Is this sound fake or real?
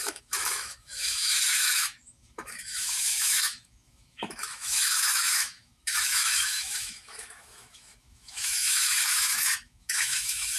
fake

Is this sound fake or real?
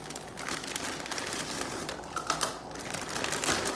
real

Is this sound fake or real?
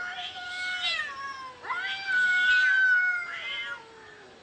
real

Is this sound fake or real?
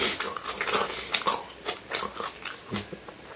real